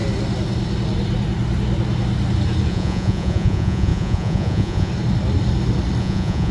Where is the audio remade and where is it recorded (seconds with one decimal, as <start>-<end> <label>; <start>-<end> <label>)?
0.0-2.7 recorded; 2.7-4.9 remade; 4.9-6.0 recorded; 6.0-6.5 remade